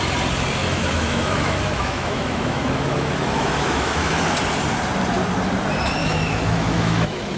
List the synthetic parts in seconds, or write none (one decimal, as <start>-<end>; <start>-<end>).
0.6-4.2; 6.0-7.4